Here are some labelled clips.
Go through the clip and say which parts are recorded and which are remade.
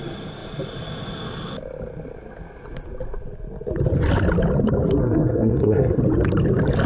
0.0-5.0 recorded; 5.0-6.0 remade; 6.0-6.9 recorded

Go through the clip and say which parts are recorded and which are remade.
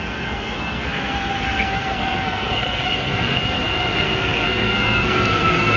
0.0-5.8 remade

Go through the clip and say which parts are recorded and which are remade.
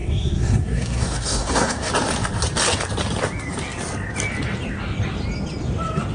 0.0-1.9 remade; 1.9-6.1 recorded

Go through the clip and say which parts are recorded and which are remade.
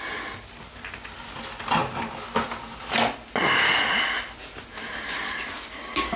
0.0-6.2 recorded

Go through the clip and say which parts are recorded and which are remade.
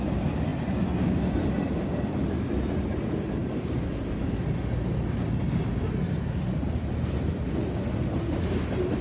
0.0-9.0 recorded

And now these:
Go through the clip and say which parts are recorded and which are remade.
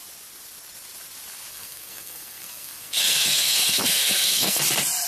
0.0-1.5 recorded; 1.5-4.6 remade; 4.6-5.1 recorded